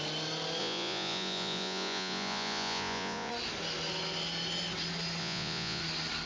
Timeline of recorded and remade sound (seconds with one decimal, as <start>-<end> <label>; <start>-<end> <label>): 0.0-0.6 recorded; 0.6-3.3 remade; 3.3-5.2 recorded; 5.2-5.8 remade; 5.8-6.3 recorded